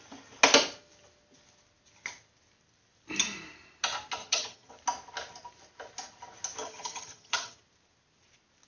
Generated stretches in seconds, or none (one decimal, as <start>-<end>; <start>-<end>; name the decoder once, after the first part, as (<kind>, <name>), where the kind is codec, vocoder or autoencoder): 4.2-4.7 (vocoder, HiFi-GAN); 6.6-7.6